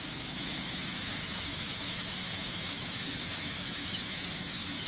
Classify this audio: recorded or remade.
remade